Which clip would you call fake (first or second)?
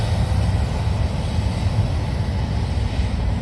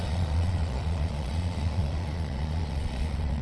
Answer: second